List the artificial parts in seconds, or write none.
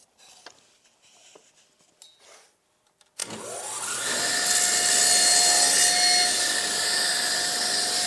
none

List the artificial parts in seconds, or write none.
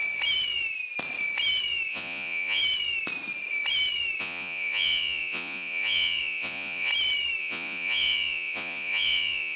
1.9-2.6 (vocoder, Vocos); 4.2-6.9; 7.4-9.6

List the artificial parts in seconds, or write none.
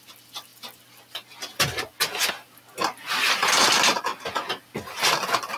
none